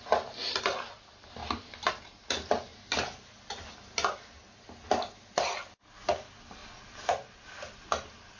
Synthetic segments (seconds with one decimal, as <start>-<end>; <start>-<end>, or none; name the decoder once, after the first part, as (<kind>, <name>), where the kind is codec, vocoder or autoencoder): 1.4-1.9 (vocoder, BigVGAN v2); 2.7-3.7